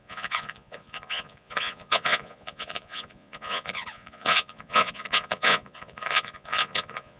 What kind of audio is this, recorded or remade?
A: remade